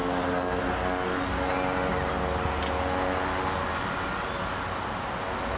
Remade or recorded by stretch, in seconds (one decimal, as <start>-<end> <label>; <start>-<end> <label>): 0.0-5.6 recorded